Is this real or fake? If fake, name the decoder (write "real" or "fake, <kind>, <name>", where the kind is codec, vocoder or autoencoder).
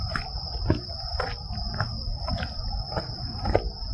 real